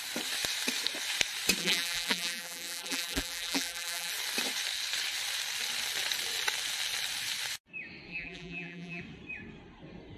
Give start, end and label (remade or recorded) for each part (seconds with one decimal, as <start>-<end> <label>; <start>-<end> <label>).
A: 0.0-1.6 recorded; 1.6-4.1 remade; 4.1-8.1 recorded; 8.1-9.0 remade; 9.0-10.2 recorded